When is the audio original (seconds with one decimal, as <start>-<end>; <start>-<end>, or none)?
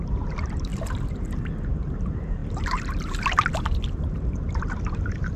0.7-2.0